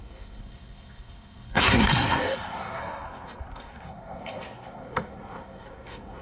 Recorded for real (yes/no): no